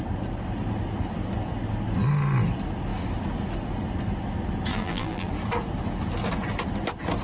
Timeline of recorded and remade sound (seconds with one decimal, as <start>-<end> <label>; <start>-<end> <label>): 0.0-4.7 recorded; 4.7-5.3 remade; 5.3-7.2 recorded